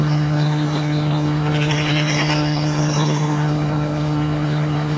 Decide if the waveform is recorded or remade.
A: remade